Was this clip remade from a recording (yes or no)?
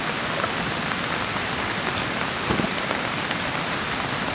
no